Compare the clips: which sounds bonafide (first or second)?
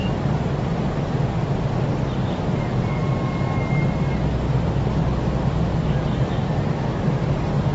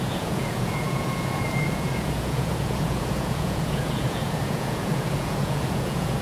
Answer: first